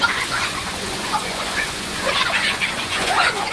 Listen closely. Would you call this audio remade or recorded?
remade